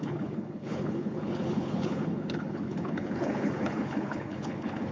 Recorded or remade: remade